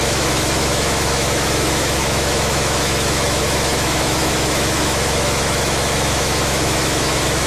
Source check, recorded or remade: remade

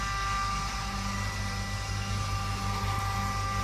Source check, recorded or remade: recorded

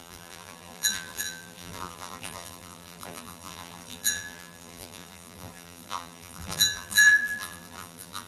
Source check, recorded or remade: remade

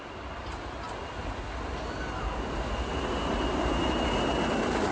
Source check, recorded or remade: recorded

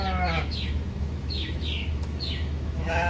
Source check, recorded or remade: remade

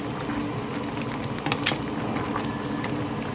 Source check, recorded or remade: recorded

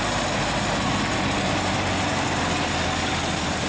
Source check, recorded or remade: recorded